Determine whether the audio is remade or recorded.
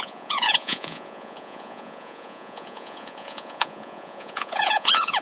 remade